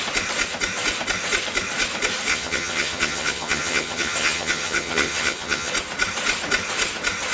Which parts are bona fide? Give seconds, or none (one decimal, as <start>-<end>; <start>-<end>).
0.0-2.3; 5.7-7.3